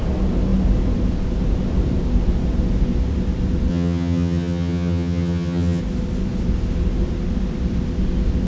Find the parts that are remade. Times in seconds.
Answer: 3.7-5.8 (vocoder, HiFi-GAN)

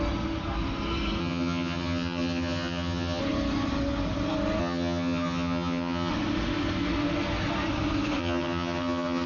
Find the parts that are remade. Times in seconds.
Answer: 1.2-3.2 (vocoder, HiFi-GAN); 4.6-6.1; 8.2-9.3

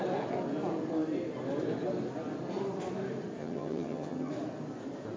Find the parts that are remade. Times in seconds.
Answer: 3.4-4.3 (vocoder, HiFi-GAN)

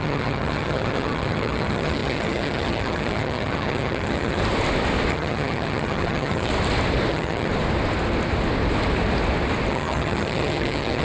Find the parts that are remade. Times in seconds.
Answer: 0.0-4.4 (vocoder, HiFi-GAN); 5.1-6.5; 7.1-7.5; 9.7-11.0

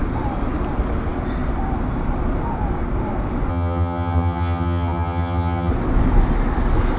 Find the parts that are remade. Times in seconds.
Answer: 3.5-5.7 (vocoder, HiFi-GAN)